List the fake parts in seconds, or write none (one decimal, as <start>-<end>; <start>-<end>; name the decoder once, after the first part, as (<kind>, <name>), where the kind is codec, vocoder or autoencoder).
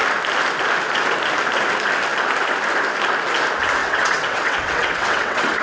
3.8-5.6 (vocoder, WaveNeXt)